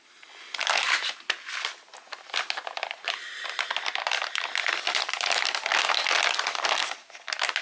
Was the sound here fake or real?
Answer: real